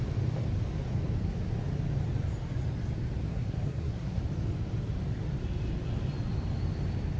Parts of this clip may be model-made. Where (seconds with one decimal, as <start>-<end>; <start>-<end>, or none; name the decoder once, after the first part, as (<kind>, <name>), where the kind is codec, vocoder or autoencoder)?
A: 3.3-4.2 (codec, SNAC)